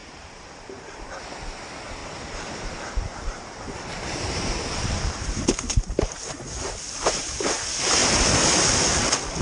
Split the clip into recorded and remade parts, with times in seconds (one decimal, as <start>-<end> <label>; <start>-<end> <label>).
0.0-0.9 remade; 0.9-2.0 recorded; 2.0-7.2 remade; 7.2-9.4 recorded